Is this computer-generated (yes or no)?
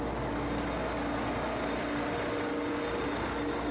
no